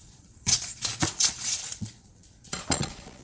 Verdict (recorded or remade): remade